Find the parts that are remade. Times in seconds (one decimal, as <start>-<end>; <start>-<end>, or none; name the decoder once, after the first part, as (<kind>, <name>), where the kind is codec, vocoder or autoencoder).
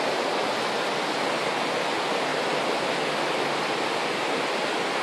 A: 2.3-4.0 (vocoder, BigVGAN v2)